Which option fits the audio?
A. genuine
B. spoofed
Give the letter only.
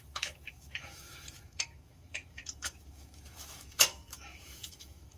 B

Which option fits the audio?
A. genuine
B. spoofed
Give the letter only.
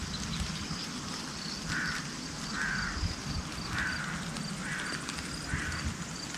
A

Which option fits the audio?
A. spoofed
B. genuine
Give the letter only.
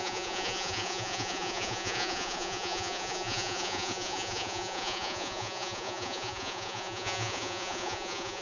A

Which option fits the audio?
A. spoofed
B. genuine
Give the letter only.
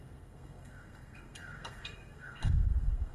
A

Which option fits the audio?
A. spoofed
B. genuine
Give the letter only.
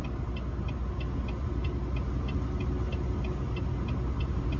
B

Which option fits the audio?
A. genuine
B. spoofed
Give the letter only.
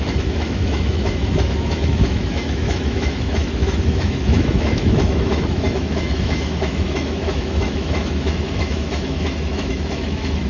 B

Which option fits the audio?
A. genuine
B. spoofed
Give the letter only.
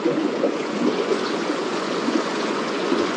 B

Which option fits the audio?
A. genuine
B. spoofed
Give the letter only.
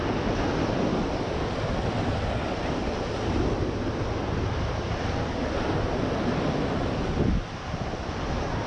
A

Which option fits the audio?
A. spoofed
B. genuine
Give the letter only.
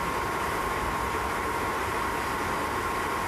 A